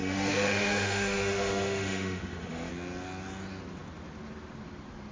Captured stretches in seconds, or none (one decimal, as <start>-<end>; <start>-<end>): 2.7-5.1